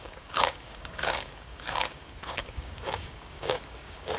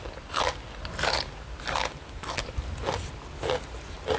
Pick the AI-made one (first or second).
first